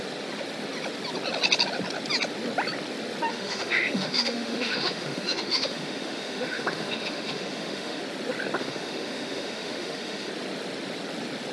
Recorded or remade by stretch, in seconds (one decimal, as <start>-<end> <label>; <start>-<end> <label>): 0.0-3.3 recorded; 3.3-8.0 remade; 8.0-8.6 recorded; 8.6-10.3 remade; 10.3-11.5 recorded